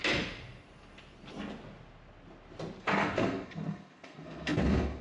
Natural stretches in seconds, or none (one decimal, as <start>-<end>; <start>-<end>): 0.0-2.8